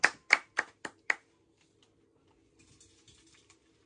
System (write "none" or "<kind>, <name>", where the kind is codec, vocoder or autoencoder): none